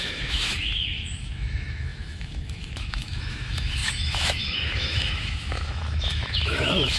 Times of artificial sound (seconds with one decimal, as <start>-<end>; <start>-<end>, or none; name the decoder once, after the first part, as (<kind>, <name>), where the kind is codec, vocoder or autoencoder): 0.0-7.0 (autoencoder, DAC-VAE)